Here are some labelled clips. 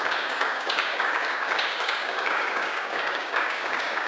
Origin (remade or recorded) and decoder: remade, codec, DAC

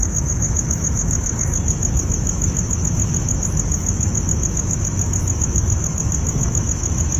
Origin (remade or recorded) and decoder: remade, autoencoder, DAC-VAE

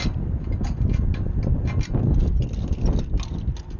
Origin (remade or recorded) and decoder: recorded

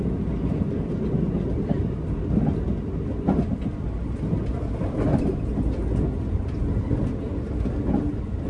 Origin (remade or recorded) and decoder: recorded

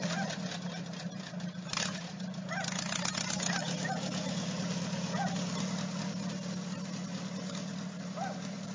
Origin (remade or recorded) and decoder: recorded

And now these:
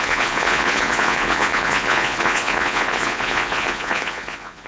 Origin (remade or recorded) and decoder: remade, vocoder, Vocos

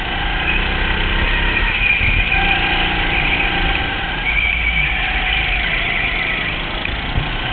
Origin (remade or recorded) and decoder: recorded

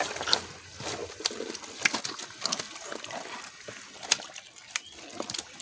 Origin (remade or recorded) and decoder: recorded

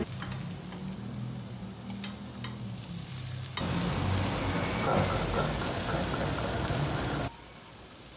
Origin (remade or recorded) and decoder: recorded